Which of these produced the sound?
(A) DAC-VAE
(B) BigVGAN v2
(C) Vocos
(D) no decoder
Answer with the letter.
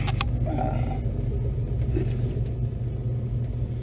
D